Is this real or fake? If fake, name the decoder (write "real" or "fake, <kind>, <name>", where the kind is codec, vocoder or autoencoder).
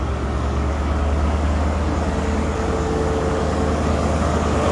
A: fake, codec, DAC